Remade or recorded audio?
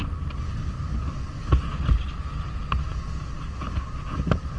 recorded